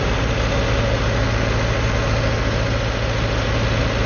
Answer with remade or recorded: recorded